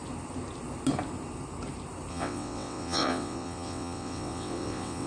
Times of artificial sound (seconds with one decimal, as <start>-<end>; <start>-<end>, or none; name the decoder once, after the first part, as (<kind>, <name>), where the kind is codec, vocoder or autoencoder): 2.1-5.1 (vocoder, WaveNeXt)